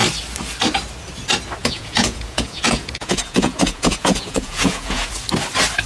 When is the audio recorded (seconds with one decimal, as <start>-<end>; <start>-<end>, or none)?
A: 0.0-1.6; 5.1-5.9